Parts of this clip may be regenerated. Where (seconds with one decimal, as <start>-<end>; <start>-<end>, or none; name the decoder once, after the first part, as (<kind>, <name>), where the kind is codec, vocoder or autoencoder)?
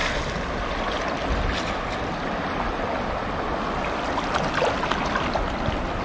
none